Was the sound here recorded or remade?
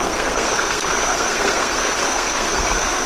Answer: remade